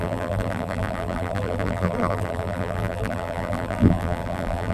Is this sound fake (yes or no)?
yes